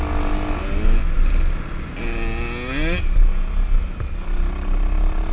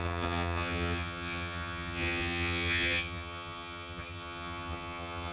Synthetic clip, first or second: second